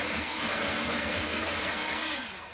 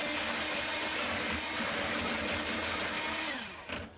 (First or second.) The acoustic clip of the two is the second